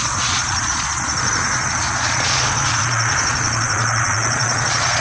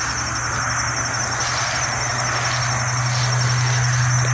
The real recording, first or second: second